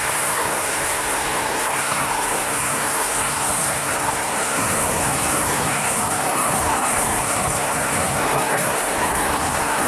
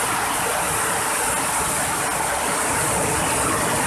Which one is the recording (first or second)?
second